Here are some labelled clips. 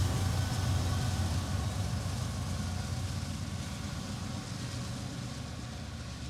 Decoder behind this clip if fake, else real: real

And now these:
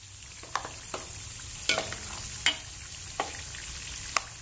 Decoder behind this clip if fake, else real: real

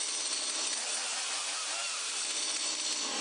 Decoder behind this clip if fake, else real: real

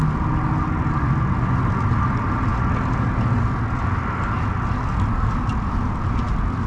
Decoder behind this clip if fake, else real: real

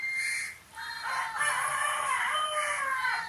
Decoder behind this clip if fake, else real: real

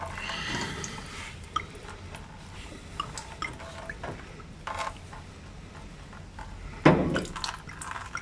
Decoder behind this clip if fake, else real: real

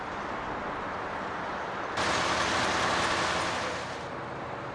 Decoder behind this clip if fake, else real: real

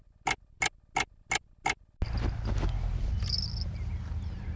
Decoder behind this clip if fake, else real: real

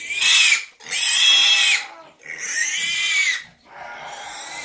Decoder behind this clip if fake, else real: real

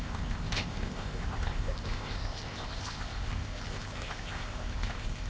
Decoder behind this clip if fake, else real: fake, codec, ZipCodec